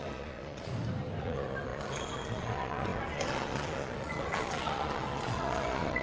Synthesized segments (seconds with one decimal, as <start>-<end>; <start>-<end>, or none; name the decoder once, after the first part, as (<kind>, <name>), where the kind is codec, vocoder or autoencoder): 0.0-0.7 (vocoder, Vocos); 1.2-6.0